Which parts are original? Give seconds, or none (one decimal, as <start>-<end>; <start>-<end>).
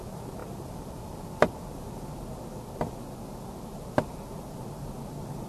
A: 0.0-0.4; 1.5-5.5